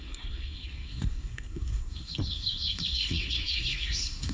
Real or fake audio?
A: fake